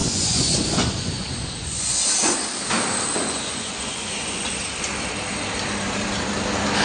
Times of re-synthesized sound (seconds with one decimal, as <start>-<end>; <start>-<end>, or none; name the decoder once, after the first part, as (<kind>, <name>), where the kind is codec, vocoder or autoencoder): 0.0-2.5 (vocoder, Vocos); 3.2-4.6